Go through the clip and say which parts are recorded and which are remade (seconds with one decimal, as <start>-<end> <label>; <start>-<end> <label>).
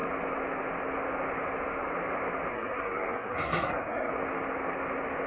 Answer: 0.0-2.5 recorded; 2.5-4.1 remade; 4.1-5.3 recorded